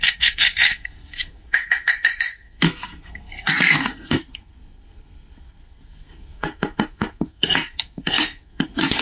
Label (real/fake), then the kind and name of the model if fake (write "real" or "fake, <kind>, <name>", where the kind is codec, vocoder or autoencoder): fake, codec, SNAC